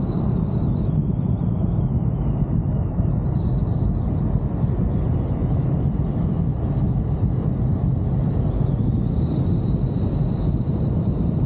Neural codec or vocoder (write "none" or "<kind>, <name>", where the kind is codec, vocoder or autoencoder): none